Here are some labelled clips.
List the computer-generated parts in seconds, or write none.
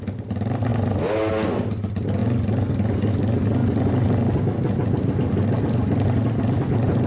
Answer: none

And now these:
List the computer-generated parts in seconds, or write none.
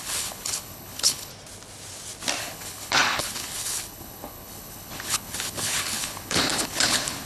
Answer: 0.0-1.3 (codec, HILCodec); 2.4-7.3